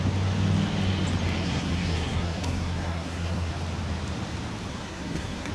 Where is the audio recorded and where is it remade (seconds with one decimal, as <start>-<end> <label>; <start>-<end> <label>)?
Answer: 0.0-1.4 recorded; 1.4-3.5 remade; 3.5-4.7 recorded; 4.7-5.5 remade